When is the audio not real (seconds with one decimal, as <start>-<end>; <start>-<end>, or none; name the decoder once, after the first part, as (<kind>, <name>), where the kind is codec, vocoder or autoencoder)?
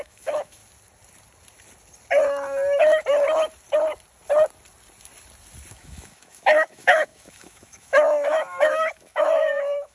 0.0-0.6 (autoencoder, DAC-VAE); 5.7-9.9